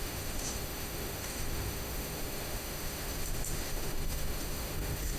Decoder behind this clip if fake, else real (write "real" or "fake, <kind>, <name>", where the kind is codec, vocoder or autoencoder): fake, autoencoder, DAC-VAE